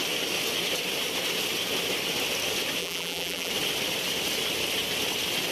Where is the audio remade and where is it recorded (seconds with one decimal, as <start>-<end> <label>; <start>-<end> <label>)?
0.0-2.8 recorded; 2.8-3.5 remade; 3.5-5.5 recorded